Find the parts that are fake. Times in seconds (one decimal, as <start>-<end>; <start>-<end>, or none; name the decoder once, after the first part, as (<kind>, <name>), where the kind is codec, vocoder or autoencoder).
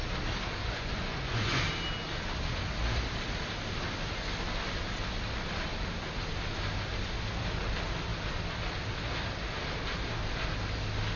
0.6-1.6 (vocoder, Vocos)